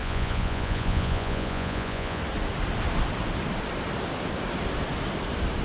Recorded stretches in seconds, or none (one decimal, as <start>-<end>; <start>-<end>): 2.2-5.6